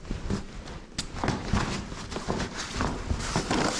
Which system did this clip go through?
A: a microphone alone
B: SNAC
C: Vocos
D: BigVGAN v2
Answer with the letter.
A